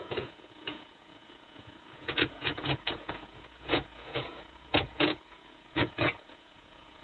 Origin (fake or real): fake